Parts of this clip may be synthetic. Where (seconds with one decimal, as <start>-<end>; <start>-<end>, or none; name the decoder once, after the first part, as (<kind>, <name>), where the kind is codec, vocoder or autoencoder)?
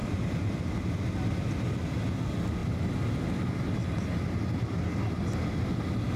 none